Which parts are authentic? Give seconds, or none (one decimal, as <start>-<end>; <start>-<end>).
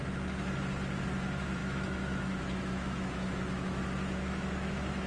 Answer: 0.0-1.1